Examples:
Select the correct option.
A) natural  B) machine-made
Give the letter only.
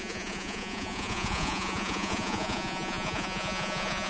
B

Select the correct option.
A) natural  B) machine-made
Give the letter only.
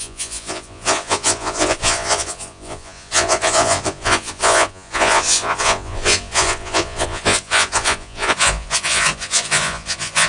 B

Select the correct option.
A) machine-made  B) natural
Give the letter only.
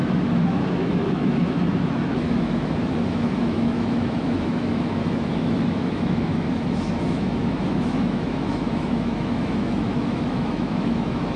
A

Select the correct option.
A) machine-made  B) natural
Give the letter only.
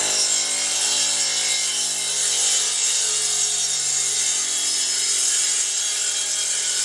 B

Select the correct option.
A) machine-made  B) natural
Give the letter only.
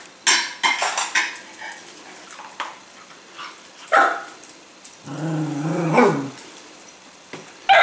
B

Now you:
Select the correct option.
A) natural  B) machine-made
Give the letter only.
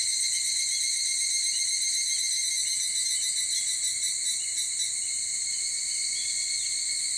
A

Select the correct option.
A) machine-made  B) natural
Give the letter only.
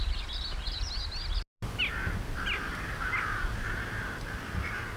B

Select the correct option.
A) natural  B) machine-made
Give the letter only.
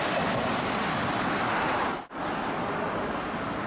A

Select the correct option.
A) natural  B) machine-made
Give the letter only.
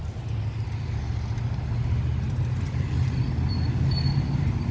A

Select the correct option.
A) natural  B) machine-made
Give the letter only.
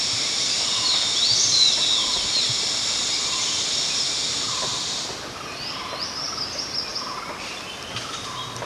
A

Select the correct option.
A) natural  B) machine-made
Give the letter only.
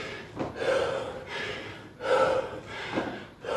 A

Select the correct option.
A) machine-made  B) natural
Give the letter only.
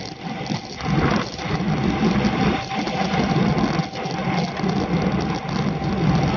B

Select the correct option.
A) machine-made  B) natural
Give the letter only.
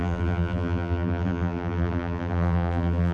A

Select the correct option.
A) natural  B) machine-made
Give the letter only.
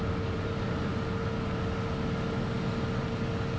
A